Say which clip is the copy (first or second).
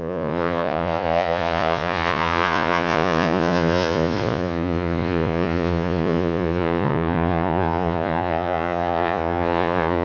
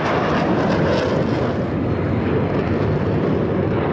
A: first